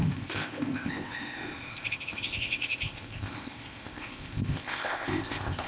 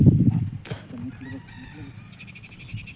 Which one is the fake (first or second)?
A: first